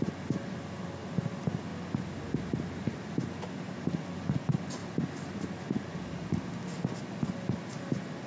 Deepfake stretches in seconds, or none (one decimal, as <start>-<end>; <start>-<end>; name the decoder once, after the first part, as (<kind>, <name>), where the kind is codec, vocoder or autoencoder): none